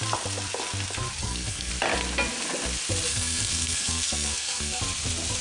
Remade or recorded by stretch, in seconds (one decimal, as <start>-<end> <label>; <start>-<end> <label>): 0.0-1.2 recorded; 1.2-1.7 remade; 1.7-3.1 recorded; 3.1-4.8 remade; 4.8-5.4 recorded